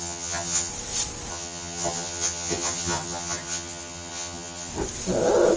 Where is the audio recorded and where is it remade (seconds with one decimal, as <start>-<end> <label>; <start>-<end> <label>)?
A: 0.0-0.7 remade; 0.7-1.3 recorded; 1.3-4.7 remade; 4.7-5.6 recorded